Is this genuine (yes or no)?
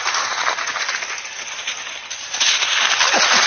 yes